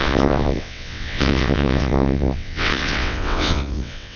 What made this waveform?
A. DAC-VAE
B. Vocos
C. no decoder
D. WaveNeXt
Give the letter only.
D